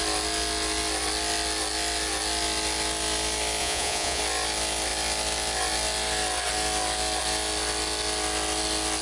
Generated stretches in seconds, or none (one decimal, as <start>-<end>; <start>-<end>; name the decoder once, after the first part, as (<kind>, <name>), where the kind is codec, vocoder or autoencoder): 3.6-4.2 (vocoder, Vocos)